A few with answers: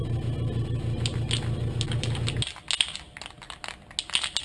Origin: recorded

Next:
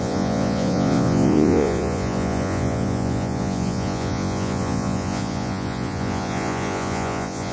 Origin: remade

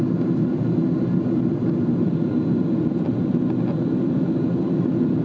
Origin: recorded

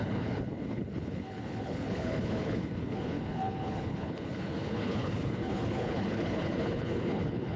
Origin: remade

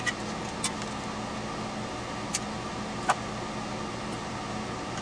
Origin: recorded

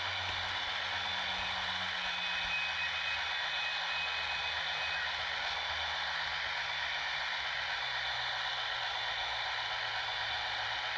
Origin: recorded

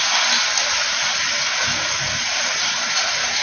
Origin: recorded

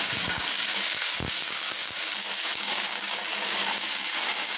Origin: remade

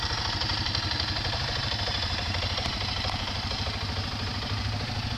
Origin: remade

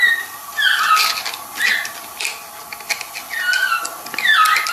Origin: recorded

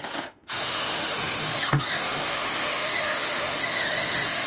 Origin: remade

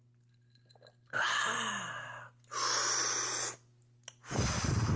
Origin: recorded